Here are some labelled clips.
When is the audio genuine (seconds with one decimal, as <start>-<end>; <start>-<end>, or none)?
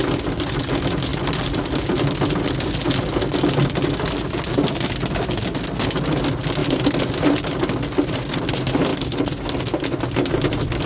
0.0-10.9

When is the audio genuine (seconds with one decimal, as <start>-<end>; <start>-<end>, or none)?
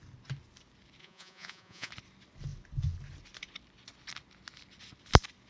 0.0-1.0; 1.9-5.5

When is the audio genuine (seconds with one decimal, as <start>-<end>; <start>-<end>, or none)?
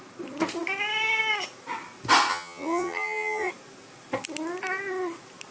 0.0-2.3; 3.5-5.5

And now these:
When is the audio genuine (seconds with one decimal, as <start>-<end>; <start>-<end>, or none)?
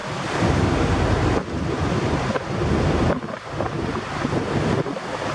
0.0-5.3